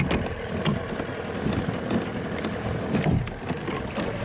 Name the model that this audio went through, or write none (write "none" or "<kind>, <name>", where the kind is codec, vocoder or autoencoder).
none